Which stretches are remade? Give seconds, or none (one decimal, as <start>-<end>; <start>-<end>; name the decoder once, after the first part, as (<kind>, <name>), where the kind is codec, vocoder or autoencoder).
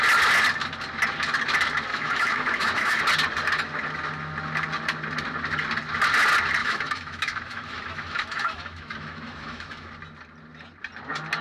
1.9-3.0 (autoencoder, DAC-VAE); 6.6-9.9